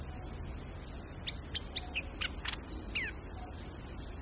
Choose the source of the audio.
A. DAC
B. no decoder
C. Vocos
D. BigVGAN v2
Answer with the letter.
B